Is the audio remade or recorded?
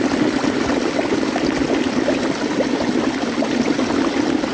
recorded